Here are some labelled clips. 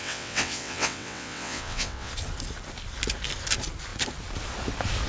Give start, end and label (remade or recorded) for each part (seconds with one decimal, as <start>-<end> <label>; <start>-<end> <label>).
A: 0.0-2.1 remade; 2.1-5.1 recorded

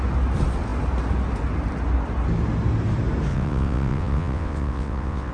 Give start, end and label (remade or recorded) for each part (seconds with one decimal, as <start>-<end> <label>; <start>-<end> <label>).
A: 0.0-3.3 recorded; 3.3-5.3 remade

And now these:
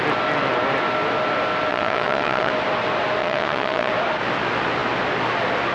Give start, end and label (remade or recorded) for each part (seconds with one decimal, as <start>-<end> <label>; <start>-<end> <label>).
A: 0.0-1.7 recorded; 1.7-2.5 remade; 2.5-3.2 recorded; 3.2-3.9 remade; 3.9-5.7 recorded

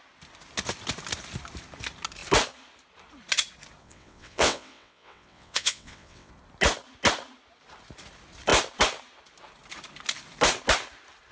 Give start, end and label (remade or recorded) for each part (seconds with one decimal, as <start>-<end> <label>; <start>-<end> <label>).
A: 0.0-3.8 recorded; 3.8-6.3 remade; 6.3-11.3 recorded

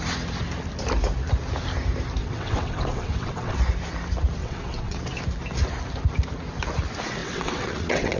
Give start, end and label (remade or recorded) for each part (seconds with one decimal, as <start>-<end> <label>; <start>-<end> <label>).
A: 0.0-2.2 recorded; 2.2-3.6 remade; 3.6-4.4 recorded; 4.4-5.0 remade; 5.0-7.2 recorded; 7.2-8.2 remade

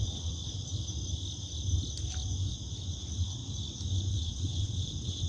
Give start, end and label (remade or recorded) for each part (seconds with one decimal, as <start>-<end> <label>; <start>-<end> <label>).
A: 0.0-0.4 remade; 0.4-3.0 recorded; 3.0-3.4 remade; 3.4-4.1 recorded; 4.1-5.3 remade

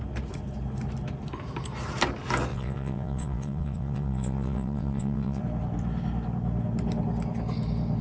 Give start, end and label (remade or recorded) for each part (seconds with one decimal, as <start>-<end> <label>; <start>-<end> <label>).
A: 0.0-2.5 recorded; 2.5-5.4 remade; 5.4-8.0 recorded

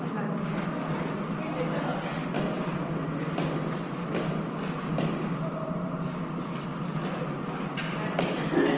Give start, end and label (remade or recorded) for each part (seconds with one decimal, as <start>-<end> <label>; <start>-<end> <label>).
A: 0.0-8.8 recorded